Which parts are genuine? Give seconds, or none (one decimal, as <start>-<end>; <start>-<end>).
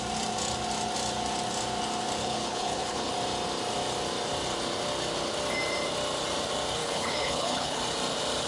0.0-2.2; 3.1-6.8; 7.8-8.5